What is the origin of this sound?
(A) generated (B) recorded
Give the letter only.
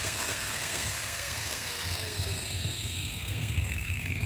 A